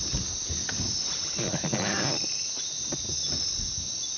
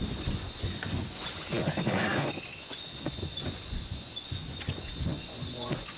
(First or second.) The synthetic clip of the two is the second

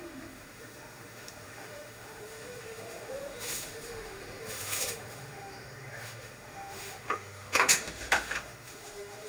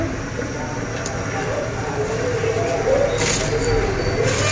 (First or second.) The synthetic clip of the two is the first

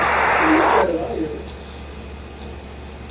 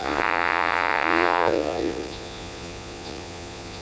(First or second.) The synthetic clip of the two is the second